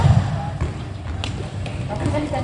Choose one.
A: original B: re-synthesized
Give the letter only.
A